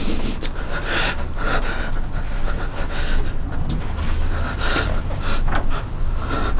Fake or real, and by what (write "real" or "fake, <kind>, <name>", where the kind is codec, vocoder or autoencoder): real